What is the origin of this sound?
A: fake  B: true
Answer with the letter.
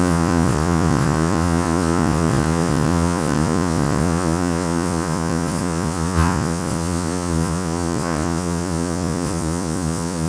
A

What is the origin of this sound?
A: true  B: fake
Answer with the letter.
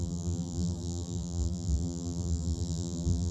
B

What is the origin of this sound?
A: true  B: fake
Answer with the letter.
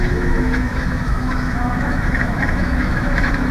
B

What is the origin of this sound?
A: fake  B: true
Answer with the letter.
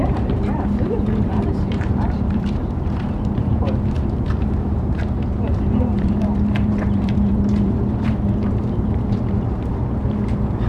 A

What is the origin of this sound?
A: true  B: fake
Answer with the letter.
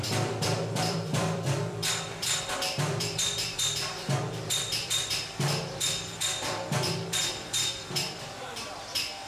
B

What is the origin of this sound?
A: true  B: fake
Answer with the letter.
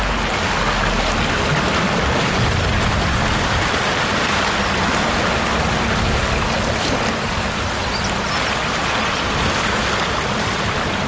A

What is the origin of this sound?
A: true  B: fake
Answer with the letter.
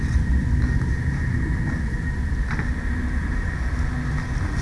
A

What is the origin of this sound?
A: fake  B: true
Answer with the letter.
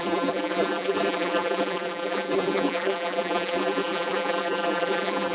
A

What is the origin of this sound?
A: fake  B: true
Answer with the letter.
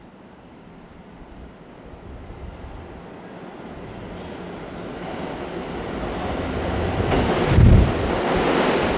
B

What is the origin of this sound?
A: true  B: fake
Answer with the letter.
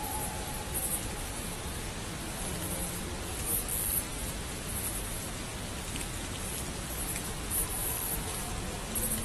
A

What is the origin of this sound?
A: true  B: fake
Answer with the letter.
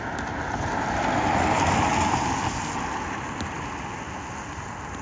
A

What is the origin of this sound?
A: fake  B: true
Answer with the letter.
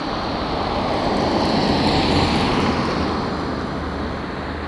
B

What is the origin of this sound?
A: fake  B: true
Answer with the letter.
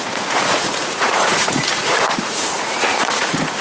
A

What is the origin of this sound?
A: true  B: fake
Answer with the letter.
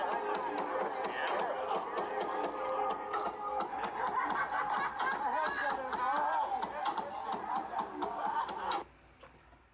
A